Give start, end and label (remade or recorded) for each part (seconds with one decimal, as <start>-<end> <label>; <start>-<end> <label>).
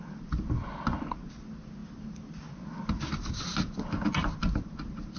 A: 0.0-5.2 recorded